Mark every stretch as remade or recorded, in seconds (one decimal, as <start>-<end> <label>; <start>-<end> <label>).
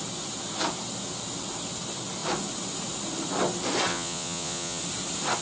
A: 0.0-3.9 recorded; 3.9-4.8 remade; 4.8-5.4 recorded